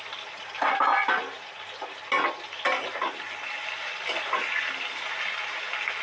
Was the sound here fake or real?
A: real